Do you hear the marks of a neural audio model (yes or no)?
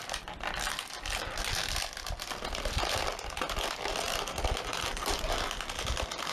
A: no